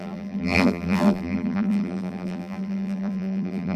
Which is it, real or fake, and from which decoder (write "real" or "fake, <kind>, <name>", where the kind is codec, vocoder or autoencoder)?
fake, vocoder, BigVGAN v2